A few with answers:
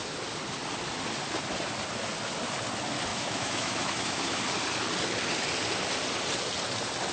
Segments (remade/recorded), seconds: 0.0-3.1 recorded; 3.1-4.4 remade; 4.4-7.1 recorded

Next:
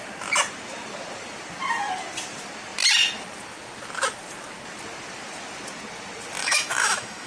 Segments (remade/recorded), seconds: 0.0-6.4 recorded; 6.4-7.3 remade

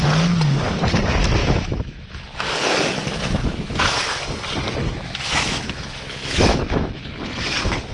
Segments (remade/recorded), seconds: 0.0-1.4 recorded; 1.4-2.5 remade; 2.5-3.4 recorded; 3.4-4.2 remade; 4.2-4.8 recorded; 4.8-7.0 remade; 7.0-7.9 recorded